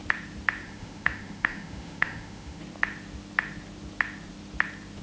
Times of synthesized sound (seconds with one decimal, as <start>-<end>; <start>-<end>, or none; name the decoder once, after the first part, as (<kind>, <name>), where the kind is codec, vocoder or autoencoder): 0.6-2.6 (autoencoder, DAC-VAE)